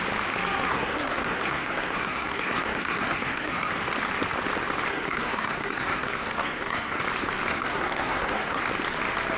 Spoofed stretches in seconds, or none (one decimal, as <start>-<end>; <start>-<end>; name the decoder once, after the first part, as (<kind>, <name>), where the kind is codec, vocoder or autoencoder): 0.7-3.8 (codec, SNAC); 4.9-7.0; 7.5-8.6